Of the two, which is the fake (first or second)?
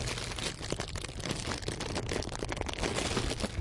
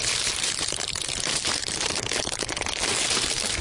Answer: second